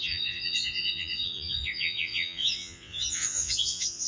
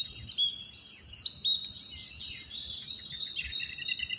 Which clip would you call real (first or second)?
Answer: second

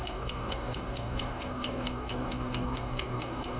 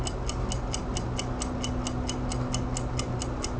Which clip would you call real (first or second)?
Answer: second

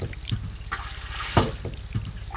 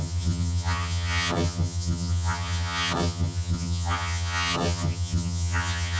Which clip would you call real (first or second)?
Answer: first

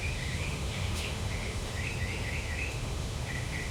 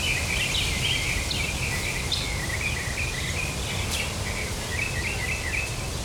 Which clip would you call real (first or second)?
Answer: second